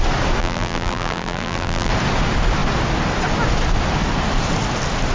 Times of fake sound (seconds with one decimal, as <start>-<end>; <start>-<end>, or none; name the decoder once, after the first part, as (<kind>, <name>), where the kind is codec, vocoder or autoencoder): 0.4-1.9 (vocoder, BigVGAN v2)